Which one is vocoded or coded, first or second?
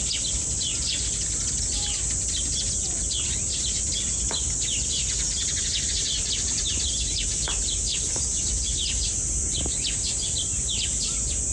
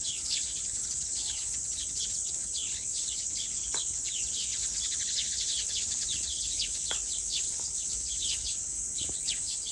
second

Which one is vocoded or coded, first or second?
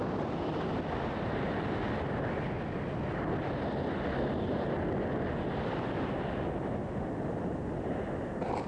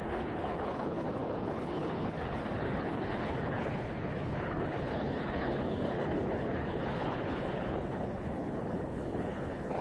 second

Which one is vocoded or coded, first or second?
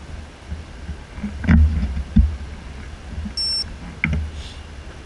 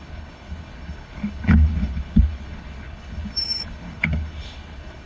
second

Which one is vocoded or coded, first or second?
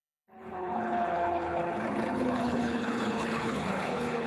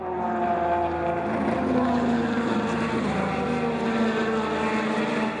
first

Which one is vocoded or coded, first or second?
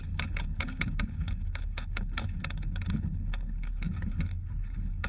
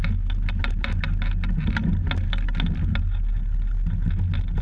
first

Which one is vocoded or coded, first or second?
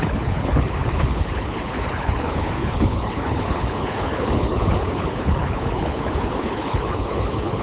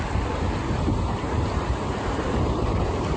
first